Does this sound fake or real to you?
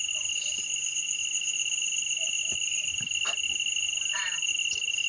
real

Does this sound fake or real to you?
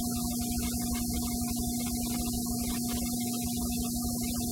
real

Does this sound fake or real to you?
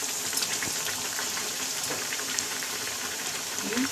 fake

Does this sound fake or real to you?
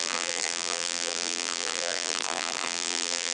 fake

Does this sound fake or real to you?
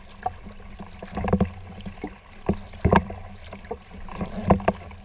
real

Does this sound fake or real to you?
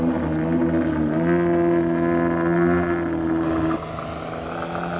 real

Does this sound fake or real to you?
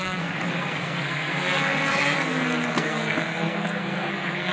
fake